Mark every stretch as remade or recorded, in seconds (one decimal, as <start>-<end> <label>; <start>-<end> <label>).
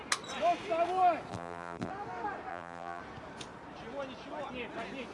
0.0-1.3 recorded; 1.3-1.9 remade; 1.9-2.5 recorded; 2.5-3.0 remade; 3.0-5.1 recorded